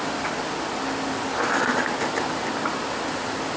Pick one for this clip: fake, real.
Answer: real